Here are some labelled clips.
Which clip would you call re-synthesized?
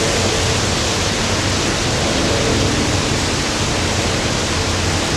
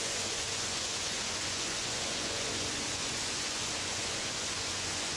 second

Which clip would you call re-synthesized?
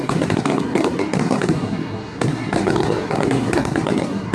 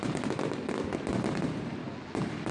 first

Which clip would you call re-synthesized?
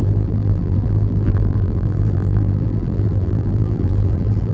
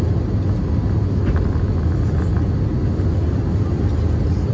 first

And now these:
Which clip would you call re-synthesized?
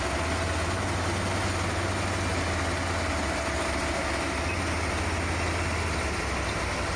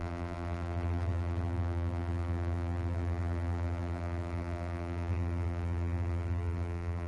second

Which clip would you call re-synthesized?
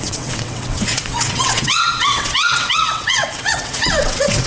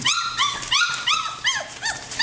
first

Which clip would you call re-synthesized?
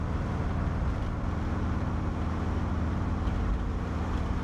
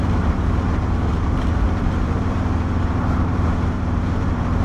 second